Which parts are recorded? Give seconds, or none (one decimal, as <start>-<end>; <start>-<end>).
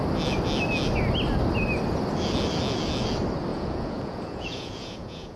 0.0-3.5